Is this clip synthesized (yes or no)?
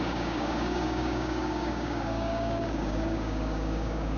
yes